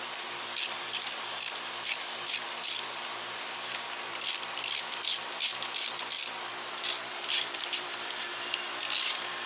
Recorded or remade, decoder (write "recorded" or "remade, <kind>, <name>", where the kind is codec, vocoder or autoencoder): remade, vocoder, BigVGAN v2